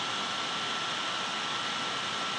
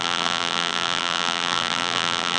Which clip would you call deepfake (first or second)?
second